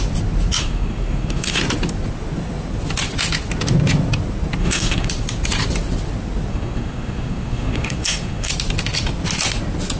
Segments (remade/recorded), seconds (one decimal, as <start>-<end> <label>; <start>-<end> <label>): 0.0-0.6 recorded; 0.6-1.6 remade; 1.6-4.6 recorded; 4.6-5.1 remade; 5.1-6.5 recorded; 6.5-8.5 remade; 8.5-10.0 recorded